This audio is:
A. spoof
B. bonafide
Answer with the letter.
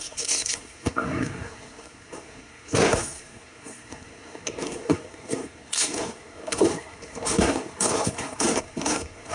A